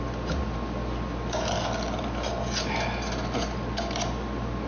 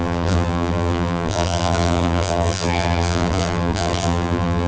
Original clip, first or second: first